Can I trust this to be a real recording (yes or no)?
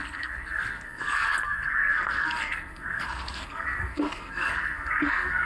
no